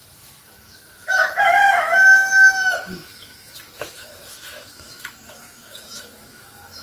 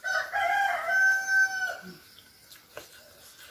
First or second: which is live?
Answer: second